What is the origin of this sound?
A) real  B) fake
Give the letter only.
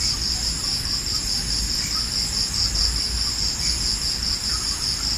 A